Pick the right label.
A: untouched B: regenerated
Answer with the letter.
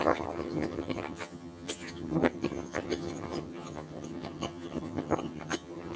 B